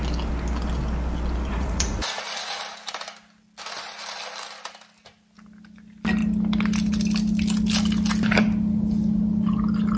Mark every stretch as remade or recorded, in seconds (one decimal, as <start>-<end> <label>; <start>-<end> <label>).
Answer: 0.0-1.5 recorded; 1.5-2.2 remade; 2.2-10.0 recorded